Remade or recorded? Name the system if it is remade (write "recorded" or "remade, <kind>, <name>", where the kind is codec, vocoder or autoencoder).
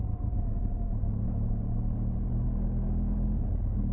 recorded